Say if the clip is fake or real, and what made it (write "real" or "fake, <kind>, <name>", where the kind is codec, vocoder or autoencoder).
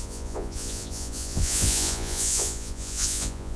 fake, vocoder, Vocos